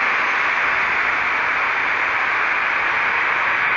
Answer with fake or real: real